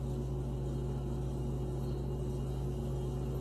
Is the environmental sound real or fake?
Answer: real